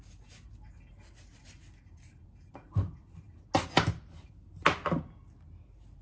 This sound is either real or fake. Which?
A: real